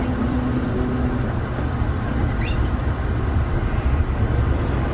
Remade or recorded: recorded